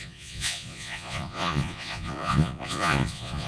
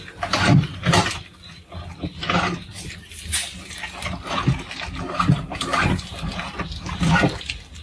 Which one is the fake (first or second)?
first